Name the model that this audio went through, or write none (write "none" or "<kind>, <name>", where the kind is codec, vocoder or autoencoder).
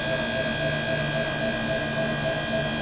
none